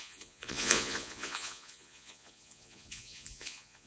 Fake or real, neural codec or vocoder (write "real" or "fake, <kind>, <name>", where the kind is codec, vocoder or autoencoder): fake, vocoder, Vocos